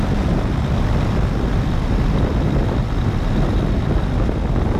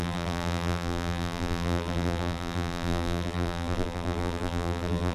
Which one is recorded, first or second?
first